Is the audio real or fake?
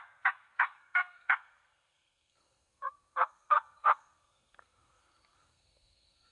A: fake